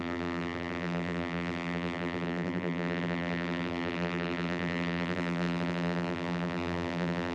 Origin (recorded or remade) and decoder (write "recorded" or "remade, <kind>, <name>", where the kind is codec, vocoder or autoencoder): remade, vocoder, BigVGAN v2